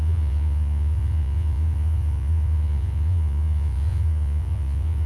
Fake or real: fake